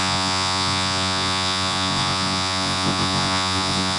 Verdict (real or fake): fake